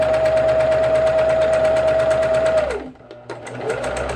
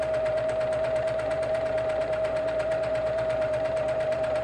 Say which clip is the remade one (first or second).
second